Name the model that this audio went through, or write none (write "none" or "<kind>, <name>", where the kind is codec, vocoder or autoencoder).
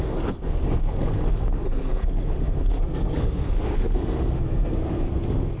codec, SNAC